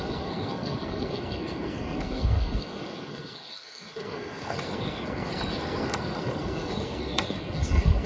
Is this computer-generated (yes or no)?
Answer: yes